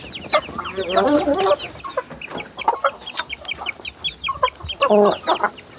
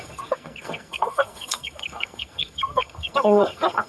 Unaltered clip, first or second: first